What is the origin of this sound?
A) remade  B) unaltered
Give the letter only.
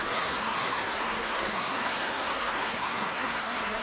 A